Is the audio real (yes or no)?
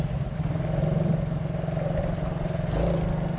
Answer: yes